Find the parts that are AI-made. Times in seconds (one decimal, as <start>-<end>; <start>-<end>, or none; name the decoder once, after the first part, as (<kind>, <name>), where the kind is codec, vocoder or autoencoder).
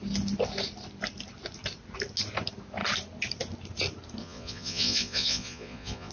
4.2-6.1 (vocoder, Vocos)